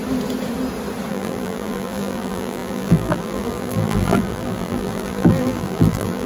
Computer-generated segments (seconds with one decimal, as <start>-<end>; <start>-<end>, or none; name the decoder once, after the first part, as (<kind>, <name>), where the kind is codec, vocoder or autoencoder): 1.1-6.3 (vocoder, BigVGAN v2)